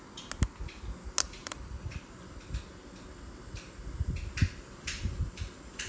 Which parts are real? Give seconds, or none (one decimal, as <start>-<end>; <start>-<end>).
0.0-1.4; 2.3-4.4